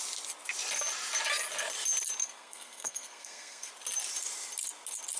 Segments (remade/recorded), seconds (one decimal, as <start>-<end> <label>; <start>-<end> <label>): 0.0-2.2 recorded; 2.2-3.7 remade; 3.7-5.2 recorded